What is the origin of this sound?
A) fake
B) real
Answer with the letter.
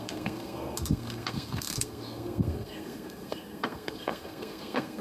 A